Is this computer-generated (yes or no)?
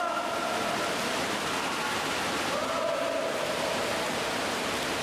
no